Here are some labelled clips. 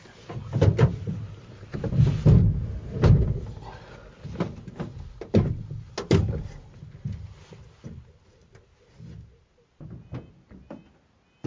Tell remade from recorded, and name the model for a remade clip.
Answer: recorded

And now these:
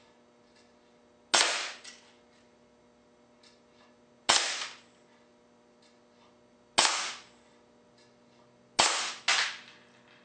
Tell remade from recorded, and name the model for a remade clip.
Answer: recorded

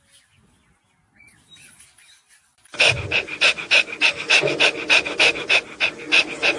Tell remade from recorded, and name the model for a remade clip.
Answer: recorded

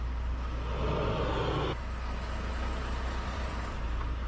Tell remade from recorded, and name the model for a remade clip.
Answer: recorded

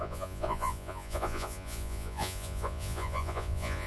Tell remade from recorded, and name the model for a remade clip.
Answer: remade, vocoder, Vocos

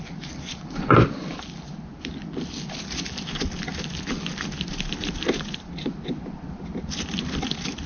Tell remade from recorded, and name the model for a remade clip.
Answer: recorded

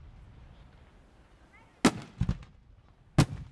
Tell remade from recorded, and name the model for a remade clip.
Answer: recorded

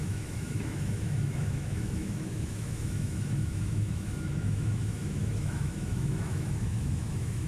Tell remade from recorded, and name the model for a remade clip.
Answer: remade, autoencoder, DAC-VAE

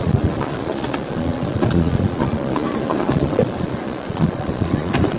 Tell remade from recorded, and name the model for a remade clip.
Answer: remade, vocoder, Vocos